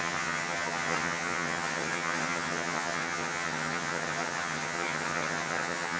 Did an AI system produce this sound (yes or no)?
yes